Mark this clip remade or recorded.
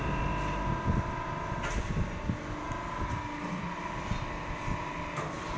recorded